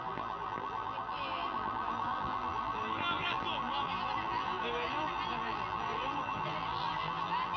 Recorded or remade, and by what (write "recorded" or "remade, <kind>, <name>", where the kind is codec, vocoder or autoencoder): remade, vocoder, BigVGAN v2